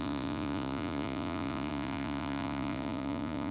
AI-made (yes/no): yes